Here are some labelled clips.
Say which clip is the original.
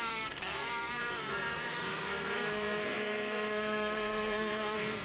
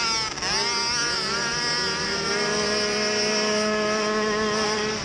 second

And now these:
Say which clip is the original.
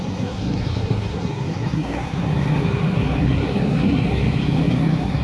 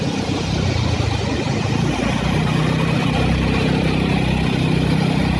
second